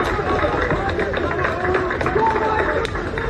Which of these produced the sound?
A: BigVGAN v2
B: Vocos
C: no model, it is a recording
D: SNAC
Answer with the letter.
C